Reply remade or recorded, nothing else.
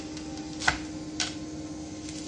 recorded